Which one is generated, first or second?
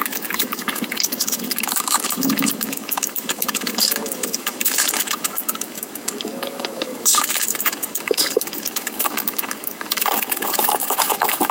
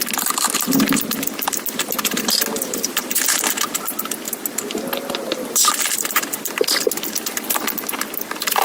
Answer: first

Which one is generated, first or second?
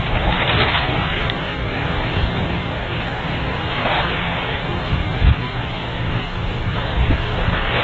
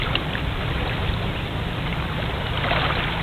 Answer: first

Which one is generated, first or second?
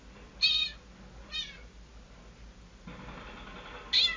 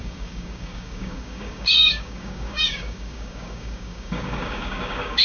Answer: second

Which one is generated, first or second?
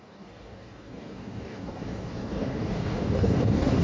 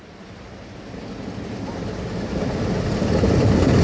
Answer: first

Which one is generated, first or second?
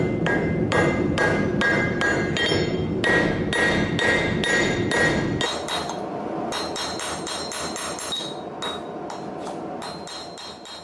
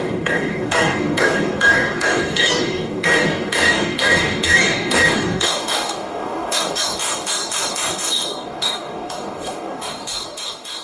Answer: second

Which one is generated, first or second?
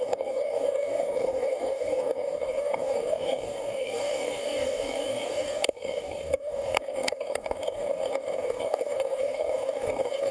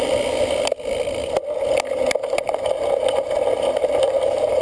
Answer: first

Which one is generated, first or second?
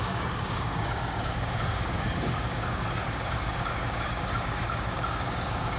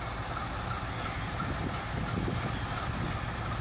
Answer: first